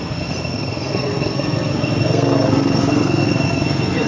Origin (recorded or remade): remade